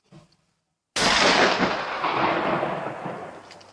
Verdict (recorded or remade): recorded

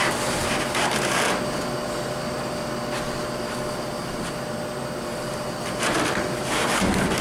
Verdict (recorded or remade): recorded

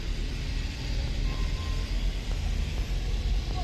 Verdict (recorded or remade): remade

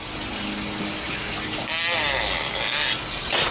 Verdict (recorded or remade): recorded